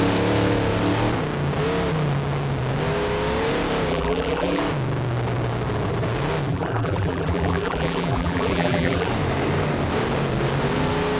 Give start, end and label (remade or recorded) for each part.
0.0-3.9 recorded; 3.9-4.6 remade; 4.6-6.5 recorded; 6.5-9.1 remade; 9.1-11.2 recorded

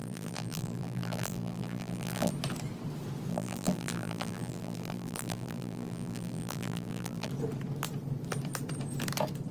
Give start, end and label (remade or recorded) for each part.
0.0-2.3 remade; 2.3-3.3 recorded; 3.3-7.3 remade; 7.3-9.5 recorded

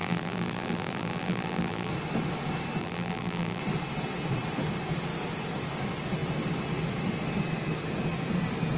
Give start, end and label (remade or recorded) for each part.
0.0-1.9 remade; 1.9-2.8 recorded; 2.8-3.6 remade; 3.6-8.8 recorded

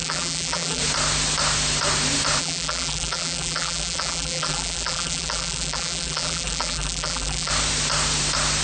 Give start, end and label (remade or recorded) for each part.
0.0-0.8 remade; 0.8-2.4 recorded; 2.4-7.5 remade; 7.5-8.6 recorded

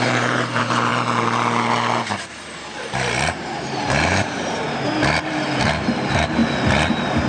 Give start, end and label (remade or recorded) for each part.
0.0-0.9 remade; 0.9-2.0 recorded; 2.0-6.4 remade; 6.4-7.3 recorded

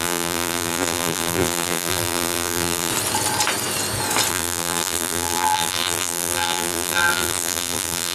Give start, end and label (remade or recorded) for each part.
0.0-2.9 remade; 2.9-4.3 recorded; 4.3-8.1 remade

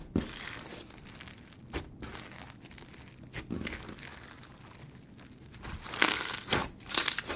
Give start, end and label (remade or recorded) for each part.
0.0-6.6 recorded; 6.6-7.4 remade